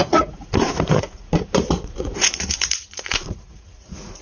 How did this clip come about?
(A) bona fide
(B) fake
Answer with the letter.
B